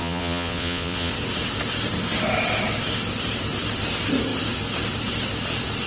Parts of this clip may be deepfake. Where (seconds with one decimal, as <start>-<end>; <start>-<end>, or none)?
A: 0.0-1.1